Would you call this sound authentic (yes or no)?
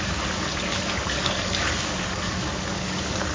no